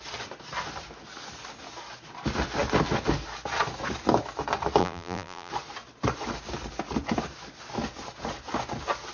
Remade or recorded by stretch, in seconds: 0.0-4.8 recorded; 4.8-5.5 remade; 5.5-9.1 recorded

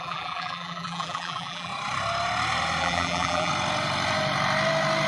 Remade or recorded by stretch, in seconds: 0.0-1.7 remade; 1.7-2.8 recorded; 2.8-3.5 remade; 3.5-5.1 recorded

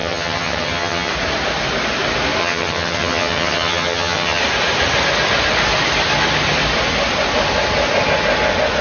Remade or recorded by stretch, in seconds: 0.0-1.1 remade; 1.1-2.4 recorded; 2.4-4.4 remade; 4.4-8.8 recorded

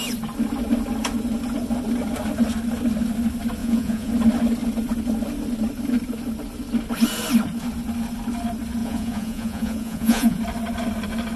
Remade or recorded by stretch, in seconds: 0.0-3.6 recorded; 3.6-4.1 remade; 4.1-8.8 recorded; 8.8-10.4 remade; 10.4-11.4 recorded

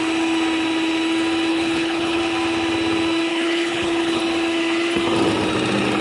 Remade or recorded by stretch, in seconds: 0.0-1.5 recorded; 1.5-2.2 remade; 2.2-3.3 recorded; 3.3-4.2 remade; 4.2-6.0 recorded

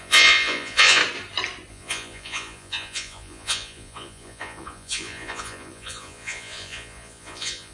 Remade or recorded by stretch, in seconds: 0.0-1.0 remade; 1.0-1.7 recorded; 1.7-7.7 remade

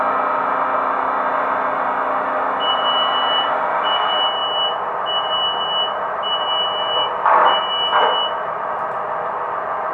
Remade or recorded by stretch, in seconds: 0.0-9.9 recorded

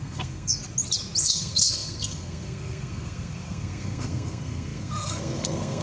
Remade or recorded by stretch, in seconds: 0.0-0.6 remade; 0.6-1.2 recorded; 1.2-5.8 remade